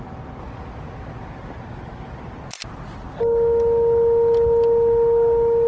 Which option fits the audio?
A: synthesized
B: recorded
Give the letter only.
B